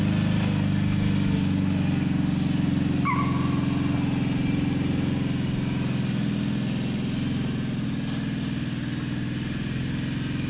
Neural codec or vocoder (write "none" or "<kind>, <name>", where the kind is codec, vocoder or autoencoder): none